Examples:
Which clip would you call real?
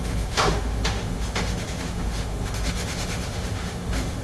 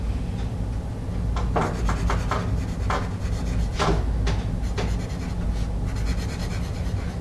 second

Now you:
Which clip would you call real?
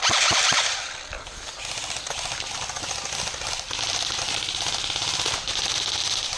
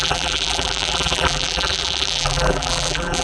first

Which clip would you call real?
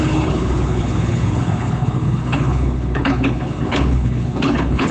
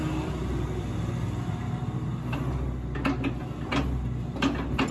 second